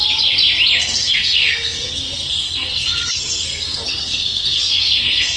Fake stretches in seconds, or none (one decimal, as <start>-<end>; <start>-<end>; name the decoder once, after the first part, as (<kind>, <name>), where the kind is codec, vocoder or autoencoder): 0.8-5.4 (codec, SNAC)

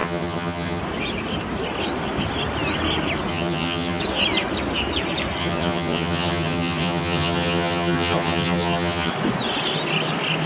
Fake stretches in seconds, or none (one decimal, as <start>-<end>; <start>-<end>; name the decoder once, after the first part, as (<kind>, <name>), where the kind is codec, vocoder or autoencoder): 0.0-0.8 (vocoder, HiFi-GAN); 3.3-4.0; 5.4-9.1

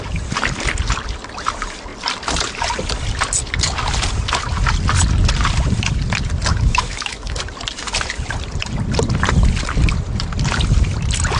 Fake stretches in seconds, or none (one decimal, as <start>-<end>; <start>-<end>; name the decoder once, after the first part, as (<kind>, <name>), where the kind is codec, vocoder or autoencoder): 6.5-7.4 (autoencoder, DAC-VAE)

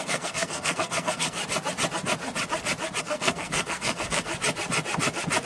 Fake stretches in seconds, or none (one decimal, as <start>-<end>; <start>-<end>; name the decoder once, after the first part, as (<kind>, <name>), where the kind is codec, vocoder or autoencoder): 0.0-1.4 (codec, SNAC); 3.0-4.3

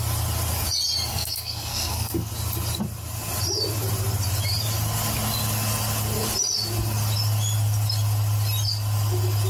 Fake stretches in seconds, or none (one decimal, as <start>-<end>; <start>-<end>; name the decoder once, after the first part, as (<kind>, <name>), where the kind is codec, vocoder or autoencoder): 1.1-2.3 (codec, SNAC)

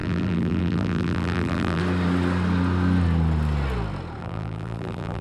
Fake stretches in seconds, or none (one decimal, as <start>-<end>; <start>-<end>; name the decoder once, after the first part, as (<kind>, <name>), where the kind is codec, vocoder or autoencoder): 0.0-1.8 (vocoder, BigVGAN v2); 4.2-5.2

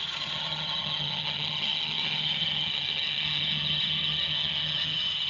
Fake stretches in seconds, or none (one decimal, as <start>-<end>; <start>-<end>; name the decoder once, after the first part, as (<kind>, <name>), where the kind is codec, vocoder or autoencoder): 0.0-5.3 (vocoder, HiFi-GAN)

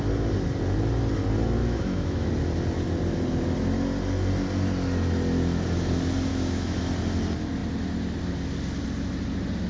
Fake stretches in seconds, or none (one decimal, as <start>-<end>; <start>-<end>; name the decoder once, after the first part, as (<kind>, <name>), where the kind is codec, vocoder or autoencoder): 1.6-2.3 (autoencoder, DAC-VAE); 6.3-6.8